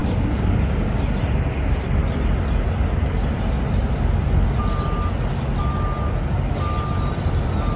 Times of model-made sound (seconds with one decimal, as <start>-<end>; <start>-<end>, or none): 0.0-1.1